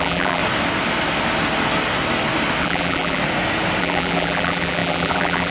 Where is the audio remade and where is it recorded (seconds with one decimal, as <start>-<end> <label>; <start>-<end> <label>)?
0.0-0.4 remade; 0.4-2.6 recorded; 2.6-3.2 remade; 3.2-3.8 recorded; 3.8-5.5 remade